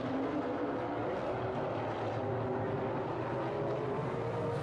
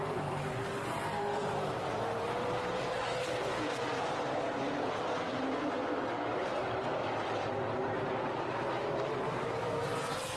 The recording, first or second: first